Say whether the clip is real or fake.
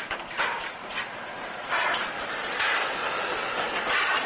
real